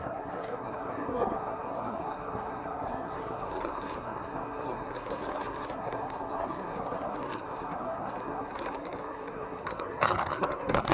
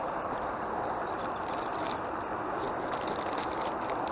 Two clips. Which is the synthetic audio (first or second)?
first